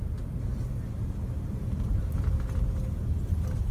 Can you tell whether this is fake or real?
real